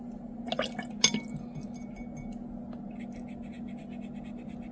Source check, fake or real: real